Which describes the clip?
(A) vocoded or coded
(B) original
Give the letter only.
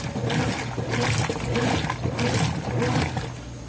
B